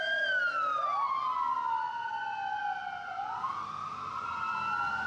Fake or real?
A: real